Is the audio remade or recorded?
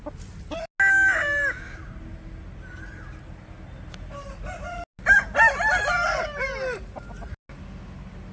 recorded